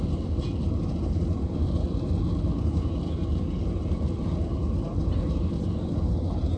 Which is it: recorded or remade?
recorded